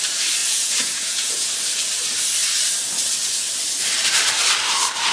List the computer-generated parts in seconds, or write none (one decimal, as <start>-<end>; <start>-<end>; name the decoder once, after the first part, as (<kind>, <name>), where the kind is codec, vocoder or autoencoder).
0.4-1.5 (vocoder, Vocos)